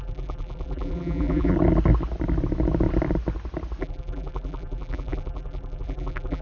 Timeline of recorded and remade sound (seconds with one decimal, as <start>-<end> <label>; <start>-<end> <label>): 0.0-1.5 remade; 1.5-3.8 recorded; 3.8-6.4 remade